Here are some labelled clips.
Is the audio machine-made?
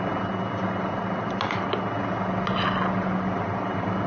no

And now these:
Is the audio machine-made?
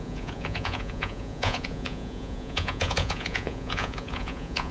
yes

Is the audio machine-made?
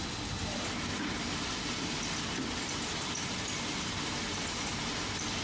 no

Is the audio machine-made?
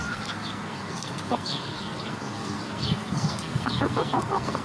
yes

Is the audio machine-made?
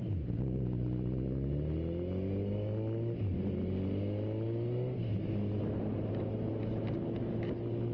no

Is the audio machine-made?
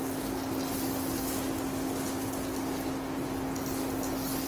no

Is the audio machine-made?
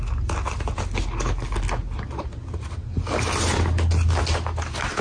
no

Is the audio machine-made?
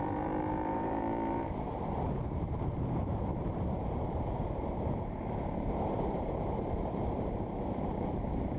yes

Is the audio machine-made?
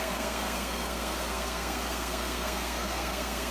yes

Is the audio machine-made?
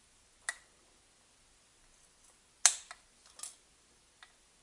no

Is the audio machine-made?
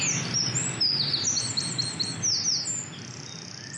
no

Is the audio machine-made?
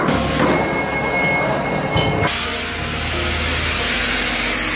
no